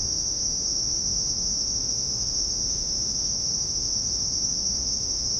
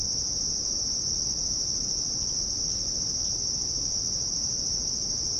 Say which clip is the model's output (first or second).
first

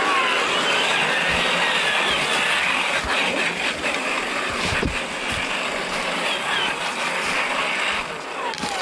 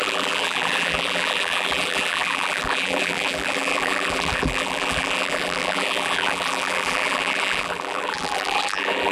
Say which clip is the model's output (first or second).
second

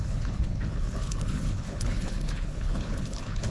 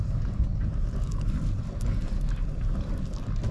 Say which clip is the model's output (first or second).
first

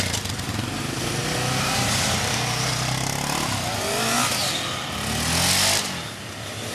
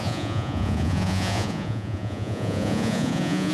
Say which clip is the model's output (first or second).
second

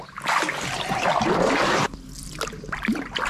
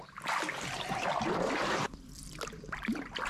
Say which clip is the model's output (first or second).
second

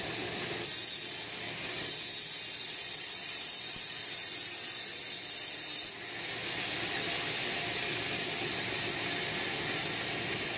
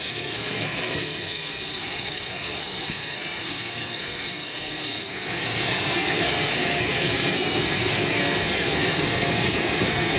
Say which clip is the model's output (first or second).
second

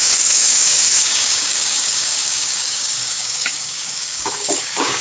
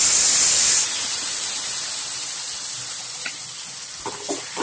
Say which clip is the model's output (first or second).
first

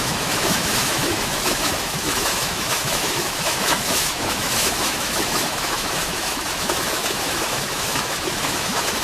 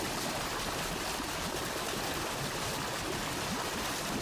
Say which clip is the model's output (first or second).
first